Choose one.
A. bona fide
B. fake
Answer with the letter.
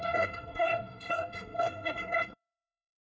B